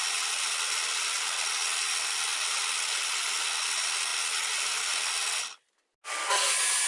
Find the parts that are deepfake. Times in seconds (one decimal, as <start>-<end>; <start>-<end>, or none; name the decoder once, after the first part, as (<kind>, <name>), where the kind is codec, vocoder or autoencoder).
none